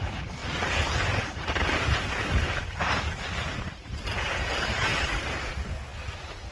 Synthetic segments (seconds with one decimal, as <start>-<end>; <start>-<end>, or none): 0.4-1.9; 3.5-4.0